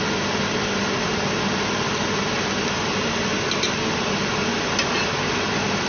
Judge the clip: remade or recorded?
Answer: recorded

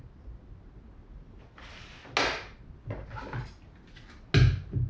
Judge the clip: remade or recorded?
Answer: recorded